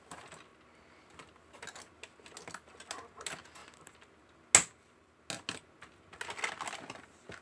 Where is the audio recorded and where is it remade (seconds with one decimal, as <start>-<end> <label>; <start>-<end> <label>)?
0.0-7.4 recorded